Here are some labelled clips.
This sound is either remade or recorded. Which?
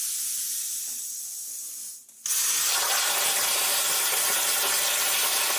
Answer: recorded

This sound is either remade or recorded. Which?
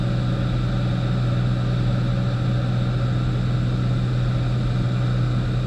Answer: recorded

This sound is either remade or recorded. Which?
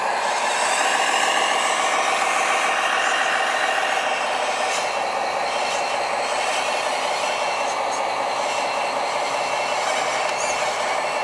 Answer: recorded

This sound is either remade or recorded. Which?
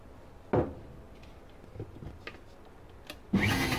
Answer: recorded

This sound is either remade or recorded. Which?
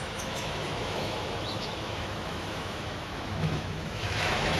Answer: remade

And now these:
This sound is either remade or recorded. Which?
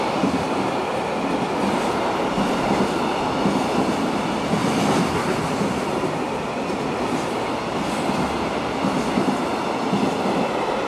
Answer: recorded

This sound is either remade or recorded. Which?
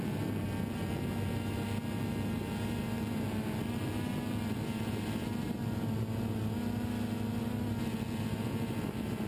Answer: recorded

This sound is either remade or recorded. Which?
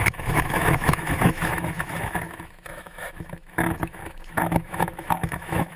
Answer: remade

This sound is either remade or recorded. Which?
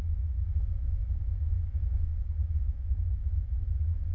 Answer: remade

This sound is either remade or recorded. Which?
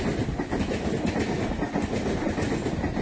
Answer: recorded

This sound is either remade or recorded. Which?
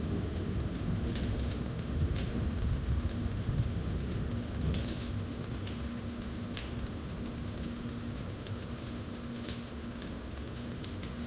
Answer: remade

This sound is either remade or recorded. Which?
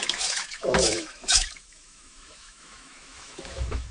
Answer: remade